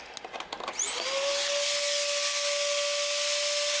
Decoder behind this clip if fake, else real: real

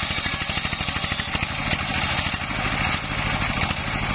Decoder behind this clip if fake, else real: real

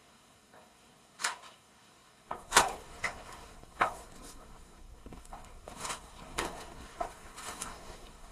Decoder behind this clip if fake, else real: fake, codec, SNAC